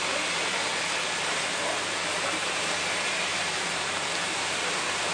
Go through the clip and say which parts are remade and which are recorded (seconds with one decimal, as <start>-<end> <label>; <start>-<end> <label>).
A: 0.0-0.7 remade; 0.7-1.3 recorded; 1.3-5.1 remade